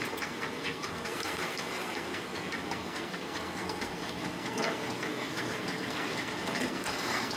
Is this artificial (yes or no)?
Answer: yes